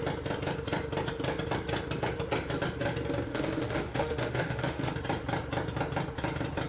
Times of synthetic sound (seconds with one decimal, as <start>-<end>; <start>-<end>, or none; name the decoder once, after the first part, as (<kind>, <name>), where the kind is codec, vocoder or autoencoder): 3.3-4.9 (autoencoder, DAC-VAE)